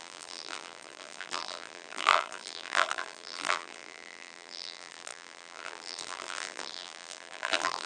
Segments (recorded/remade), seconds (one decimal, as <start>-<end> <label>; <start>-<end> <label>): 0.0-7.9 remade